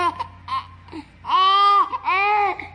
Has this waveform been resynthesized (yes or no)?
no